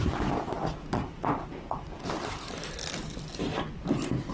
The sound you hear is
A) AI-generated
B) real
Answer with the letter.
B